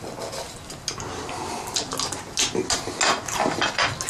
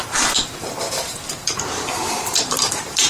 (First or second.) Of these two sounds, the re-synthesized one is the second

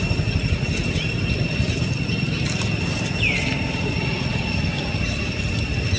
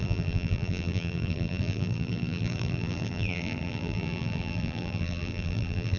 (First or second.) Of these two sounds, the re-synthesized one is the second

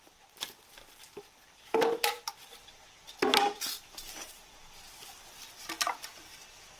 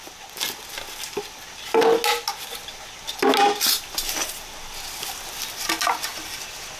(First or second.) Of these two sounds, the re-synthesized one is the first